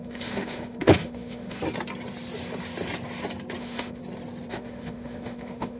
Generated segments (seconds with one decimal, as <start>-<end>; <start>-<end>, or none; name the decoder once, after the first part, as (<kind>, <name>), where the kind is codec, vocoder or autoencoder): 0.0-1.6 (autoencoder, DAC-VAE); 3.6-4.0; 4.5-5.8